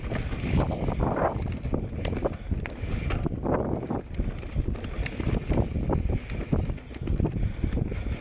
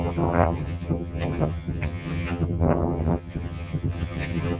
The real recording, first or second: first